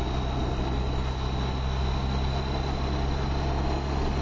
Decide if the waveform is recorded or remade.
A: recorded